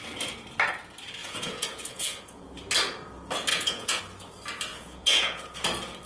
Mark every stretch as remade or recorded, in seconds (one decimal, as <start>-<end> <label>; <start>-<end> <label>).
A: 0.0-1.2 recorded; 1.2-2.5 remade; 2.5-3.5 recorded; 3.5-4.0 remade; 4.0-4.7 recorded; 4.7-5.6 remade; 5.6-6.1 recorded